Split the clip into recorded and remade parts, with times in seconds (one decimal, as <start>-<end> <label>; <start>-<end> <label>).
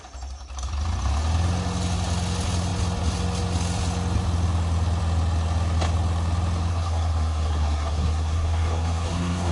0.0-6.7 recorded; 6.7-9.5 remade